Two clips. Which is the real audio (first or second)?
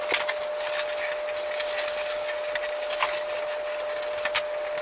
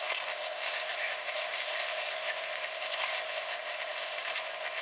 first